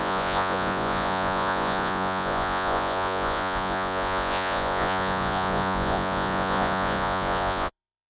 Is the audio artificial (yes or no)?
yes